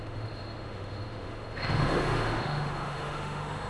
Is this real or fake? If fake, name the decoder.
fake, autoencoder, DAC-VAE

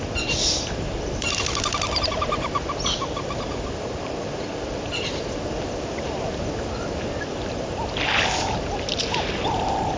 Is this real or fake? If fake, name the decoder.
real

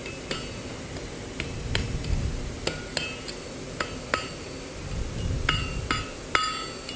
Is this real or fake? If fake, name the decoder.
real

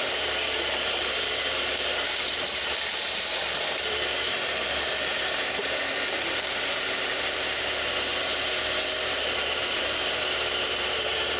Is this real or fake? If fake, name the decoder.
fake, vocoder, BigVGAN v2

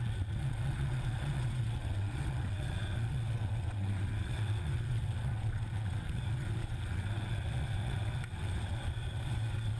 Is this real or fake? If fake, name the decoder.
fake, vocoder, WaveNeXt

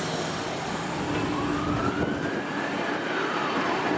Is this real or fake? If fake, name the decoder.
real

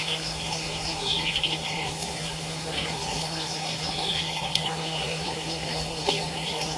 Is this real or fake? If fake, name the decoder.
fake, codec, SNAC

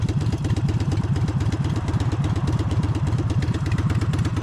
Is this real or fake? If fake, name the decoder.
fake, vocoder, BigVGAN v2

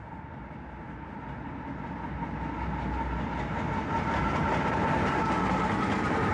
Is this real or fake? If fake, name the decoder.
real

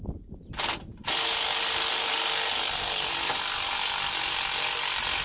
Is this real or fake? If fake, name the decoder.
real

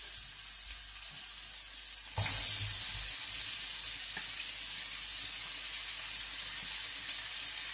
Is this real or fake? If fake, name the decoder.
real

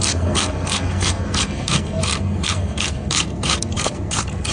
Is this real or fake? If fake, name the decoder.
fake, codec, SNAC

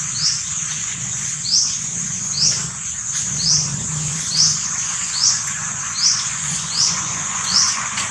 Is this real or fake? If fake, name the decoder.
fake, vocoder, Vocos